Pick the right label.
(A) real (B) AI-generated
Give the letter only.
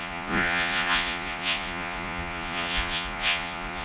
B